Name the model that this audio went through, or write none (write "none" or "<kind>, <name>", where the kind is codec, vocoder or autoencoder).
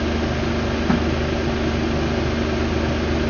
none